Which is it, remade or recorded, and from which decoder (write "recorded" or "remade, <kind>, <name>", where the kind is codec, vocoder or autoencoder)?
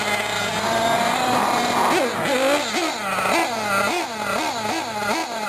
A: recorded